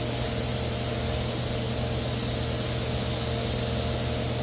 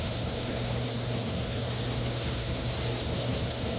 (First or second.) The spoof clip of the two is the second